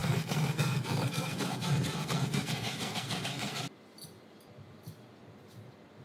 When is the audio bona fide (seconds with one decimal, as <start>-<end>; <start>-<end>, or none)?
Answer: 3.6-6.0